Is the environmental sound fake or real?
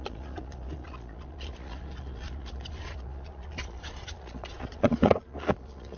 fake